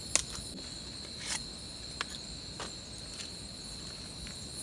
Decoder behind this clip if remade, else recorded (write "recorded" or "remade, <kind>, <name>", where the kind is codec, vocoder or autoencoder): recorded